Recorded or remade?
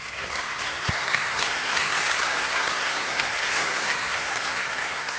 remade